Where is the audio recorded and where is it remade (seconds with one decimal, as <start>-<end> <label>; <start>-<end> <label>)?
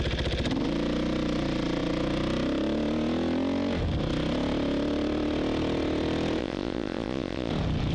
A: 0.0-6.4 recorded; 6.4-7.5 remade; 7.5-7.9 recorded